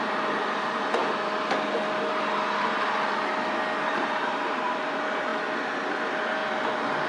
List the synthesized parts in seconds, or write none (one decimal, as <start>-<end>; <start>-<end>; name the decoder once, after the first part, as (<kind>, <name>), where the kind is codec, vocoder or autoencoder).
0.0-1.0 (vocoder, BigVGAN v2); 3.9-5.3; 5.9-6.4